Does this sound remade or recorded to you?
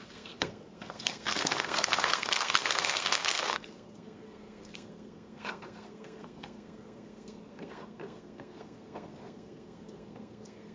remade